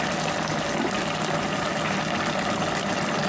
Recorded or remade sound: recorded